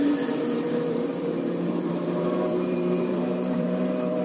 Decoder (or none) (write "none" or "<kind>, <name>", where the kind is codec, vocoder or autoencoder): vocoder, BigVGAN v2